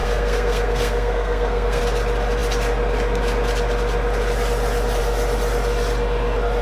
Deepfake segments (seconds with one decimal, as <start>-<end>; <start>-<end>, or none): 0.0-1.8